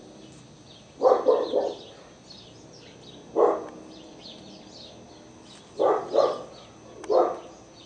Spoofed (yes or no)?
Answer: no